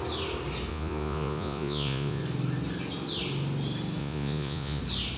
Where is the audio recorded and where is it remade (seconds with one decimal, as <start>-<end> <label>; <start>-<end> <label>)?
0.0-0.7 recorded; 0.7-2.2 remade; 2.2-4.0 recorded; 4.0-4.8 remade; 4.8-5.2 recorded